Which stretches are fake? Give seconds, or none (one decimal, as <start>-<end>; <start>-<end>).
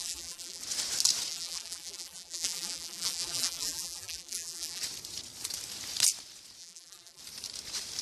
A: 0.0-0.6; 1.3-4.8; 6.6-7.2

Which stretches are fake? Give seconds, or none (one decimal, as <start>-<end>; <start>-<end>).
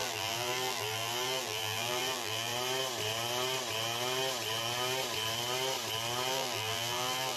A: 0.0-2.5; 6.3-7.4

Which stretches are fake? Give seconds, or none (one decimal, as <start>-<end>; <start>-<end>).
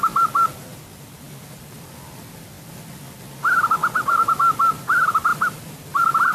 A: none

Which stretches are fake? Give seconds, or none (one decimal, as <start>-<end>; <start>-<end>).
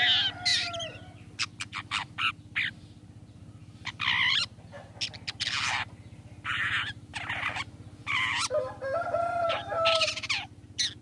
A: 0.5-2.3; 3.6-4.9; 7.1-7.6; 8.0-10.6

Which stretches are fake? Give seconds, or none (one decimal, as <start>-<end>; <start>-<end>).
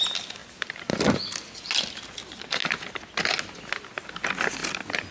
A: none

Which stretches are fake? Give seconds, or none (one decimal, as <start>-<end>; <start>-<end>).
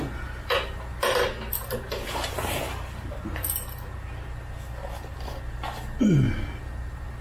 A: 1.6-3.1